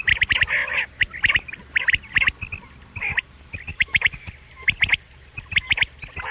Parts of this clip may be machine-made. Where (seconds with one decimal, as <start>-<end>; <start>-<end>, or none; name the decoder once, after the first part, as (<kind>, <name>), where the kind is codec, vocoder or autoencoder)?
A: 3.7-4.3 (autoencoder, DAC-VAE)